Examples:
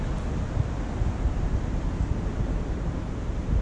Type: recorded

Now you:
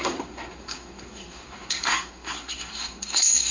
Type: remade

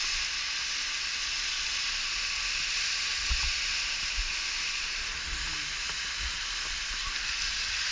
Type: recorded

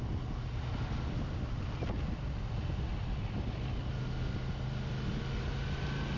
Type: recorded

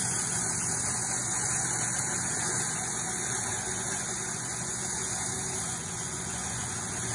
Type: remade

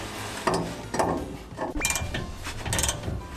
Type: recorded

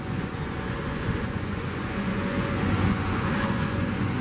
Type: remade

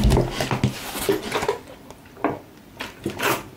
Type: recorded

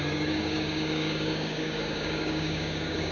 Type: remade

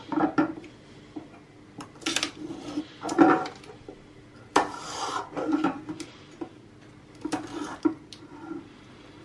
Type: recorded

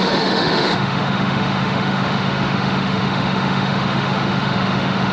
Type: remade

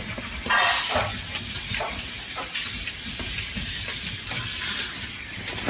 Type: recorded